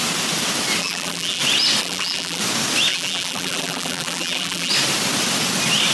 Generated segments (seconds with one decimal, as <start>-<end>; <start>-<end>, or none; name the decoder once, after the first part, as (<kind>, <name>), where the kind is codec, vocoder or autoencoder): 0.8-1.4 (vocoder, BigVGAN v2); 1.8-2.4; 2.9-4.7